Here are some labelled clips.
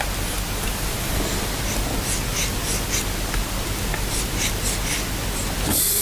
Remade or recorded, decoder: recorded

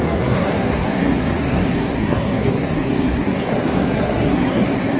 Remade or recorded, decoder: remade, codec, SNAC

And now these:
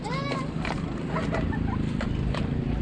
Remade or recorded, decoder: recorded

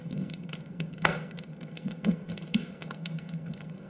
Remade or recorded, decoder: remade, codec, SNAC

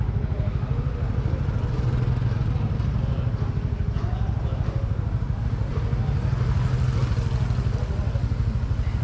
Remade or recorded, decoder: recorded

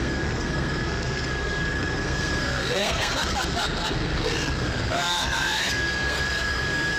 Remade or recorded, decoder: remade, codec, SNAC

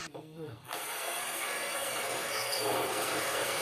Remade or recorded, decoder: remade, codec, SNAC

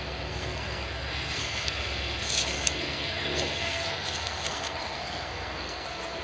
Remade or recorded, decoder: remade, codec, SNAC